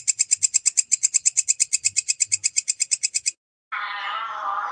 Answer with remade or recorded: recorded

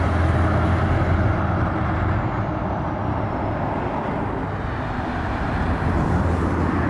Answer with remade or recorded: recorded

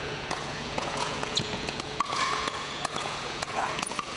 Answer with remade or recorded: remade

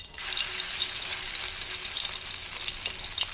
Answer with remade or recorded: recorded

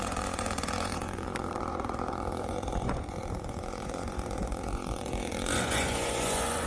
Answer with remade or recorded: remade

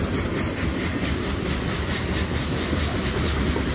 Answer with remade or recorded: recorded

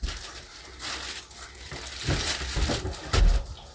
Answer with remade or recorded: recorded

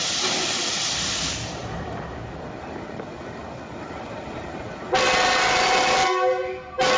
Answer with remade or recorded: recorded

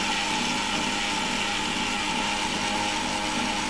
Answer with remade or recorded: recorded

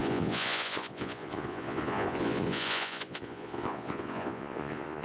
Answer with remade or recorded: remade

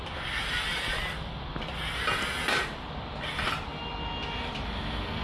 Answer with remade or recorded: recorded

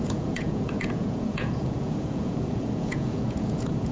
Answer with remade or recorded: remade